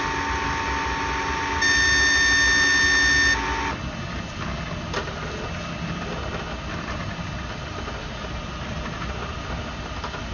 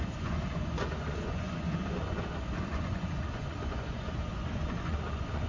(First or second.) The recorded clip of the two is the first